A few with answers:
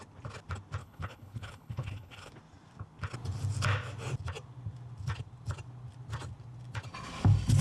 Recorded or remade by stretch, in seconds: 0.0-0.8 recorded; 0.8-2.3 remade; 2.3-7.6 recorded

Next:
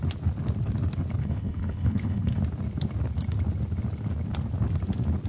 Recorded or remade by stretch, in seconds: 0.0-1.2 recorded; 1.2-2.4 remade; 2.4-5.3 recorded

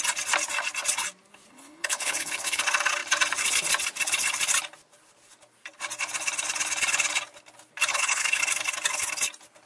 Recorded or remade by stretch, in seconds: 0.0-1.5 recorded; 1.5-2.6 remade; 2.6-7.9 recorded; 7.9-8.4 remade; 8.4-9.7 recorded